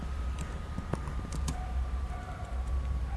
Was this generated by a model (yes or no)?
yes